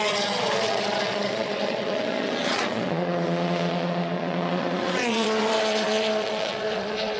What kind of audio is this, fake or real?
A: fake